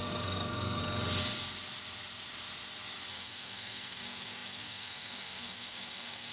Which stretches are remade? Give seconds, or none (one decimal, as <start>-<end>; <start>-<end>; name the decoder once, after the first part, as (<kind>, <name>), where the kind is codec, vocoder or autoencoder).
0.0-0.8 (codec, SNAC); 3.1-6.3